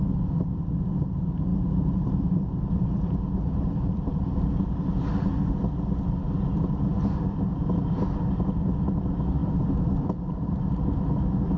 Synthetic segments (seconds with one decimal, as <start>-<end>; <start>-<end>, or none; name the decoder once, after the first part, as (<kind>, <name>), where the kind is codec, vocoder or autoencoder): 1.5-4.9 (vocoder, BigVGAN v2); 9.4-10.9